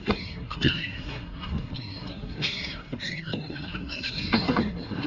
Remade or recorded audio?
remade